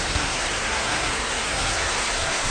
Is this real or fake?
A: fake